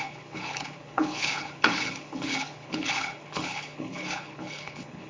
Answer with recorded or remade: remade